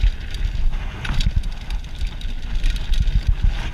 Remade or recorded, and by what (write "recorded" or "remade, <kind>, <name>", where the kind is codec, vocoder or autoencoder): recorded